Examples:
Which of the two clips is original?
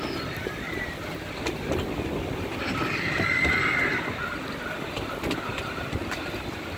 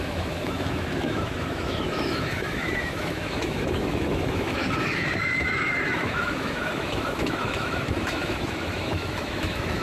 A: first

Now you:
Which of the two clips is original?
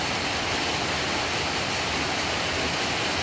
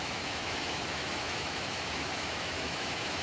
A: first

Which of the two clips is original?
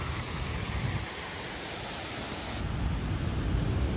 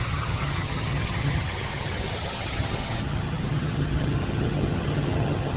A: first